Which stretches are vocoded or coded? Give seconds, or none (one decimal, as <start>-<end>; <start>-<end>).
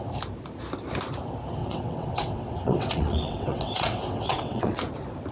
1.6-4.8